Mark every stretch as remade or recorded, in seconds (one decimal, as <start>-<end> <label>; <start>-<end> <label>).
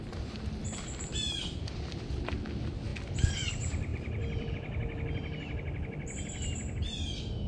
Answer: 0.0-3.9 recorded; 3.9-4.5 remade; 4.5-7.5 recorded